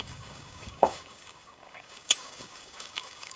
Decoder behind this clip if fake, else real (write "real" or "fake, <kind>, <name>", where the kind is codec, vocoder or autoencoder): fake, codec, DAC